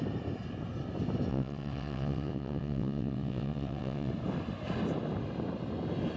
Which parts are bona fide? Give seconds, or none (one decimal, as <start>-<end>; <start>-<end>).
0.0-1.3; 4.1-6.2

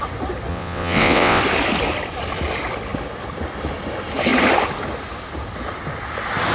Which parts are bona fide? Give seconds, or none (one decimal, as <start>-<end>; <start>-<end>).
0.0-0.5; 1.4-6.5

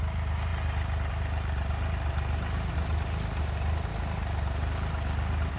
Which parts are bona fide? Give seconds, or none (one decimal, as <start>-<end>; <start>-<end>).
0.0-5.6

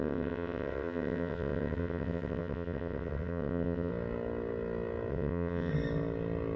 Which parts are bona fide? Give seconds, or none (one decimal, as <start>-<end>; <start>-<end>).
3.9-5.1; 5.7-6.6

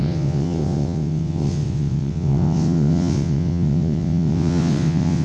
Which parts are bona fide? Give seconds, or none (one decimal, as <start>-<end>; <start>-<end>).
none

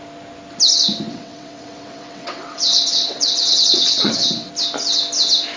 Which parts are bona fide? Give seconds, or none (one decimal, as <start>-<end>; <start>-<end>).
0.0-1.1; 4.5-5.6